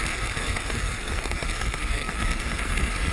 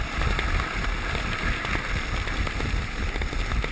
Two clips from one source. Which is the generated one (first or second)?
first